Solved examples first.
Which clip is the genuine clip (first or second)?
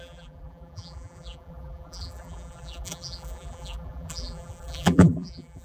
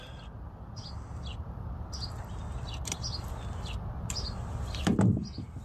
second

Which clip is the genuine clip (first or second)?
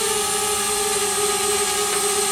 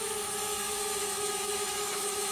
first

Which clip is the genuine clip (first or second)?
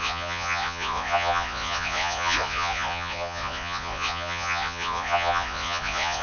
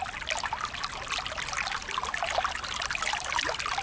second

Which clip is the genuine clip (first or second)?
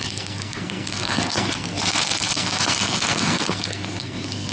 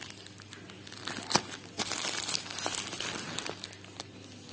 second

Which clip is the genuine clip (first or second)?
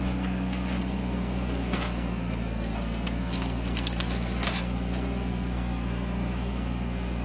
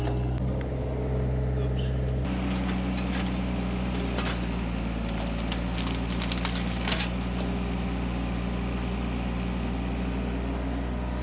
second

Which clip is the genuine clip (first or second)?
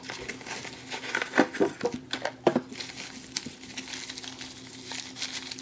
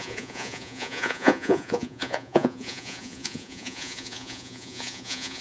first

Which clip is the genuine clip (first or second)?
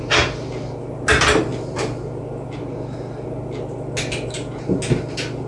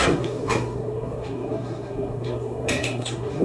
first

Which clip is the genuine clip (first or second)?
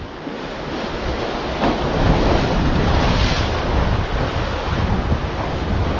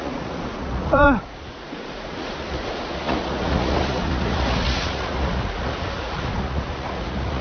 first